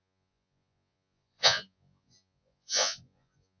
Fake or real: fake